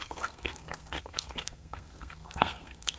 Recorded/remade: remade